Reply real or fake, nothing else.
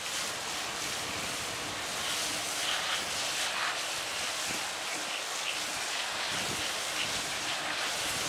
real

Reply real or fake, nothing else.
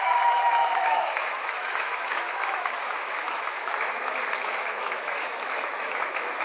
fake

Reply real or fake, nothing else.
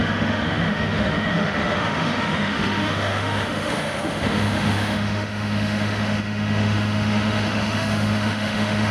fake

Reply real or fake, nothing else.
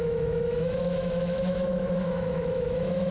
fake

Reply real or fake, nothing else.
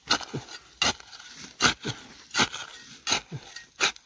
real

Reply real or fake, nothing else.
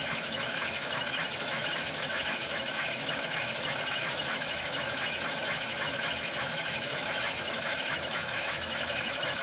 fake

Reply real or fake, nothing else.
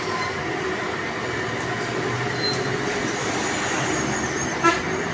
real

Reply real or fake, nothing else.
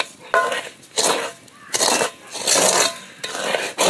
real